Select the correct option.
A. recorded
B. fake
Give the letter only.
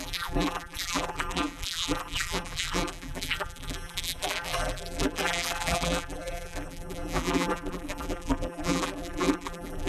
B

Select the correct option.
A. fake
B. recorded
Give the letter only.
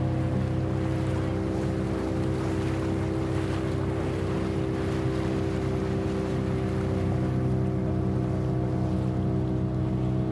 B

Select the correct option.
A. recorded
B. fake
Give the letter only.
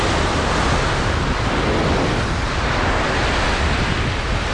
A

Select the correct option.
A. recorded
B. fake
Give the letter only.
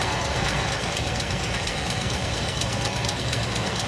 B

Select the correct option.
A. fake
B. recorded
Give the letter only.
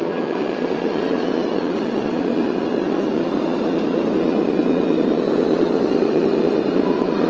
A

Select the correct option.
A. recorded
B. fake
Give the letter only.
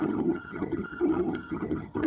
B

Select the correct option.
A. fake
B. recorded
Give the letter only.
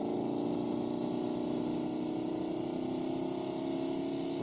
B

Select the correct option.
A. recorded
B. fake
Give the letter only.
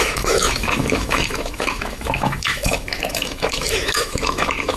B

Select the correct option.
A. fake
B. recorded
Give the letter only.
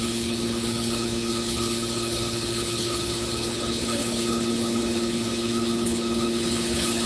A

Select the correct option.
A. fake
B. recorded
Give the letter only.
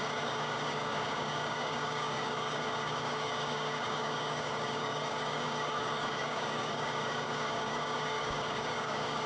A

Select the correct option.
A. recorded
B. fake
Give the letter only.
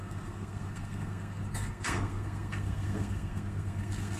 B